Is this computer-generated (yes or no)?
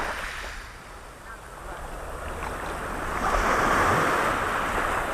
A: no